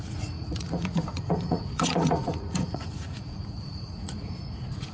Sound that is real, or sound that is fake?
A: fake